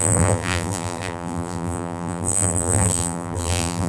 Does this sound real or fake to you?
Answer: fake